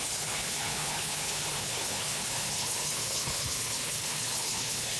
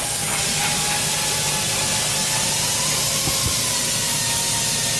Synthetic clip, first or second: first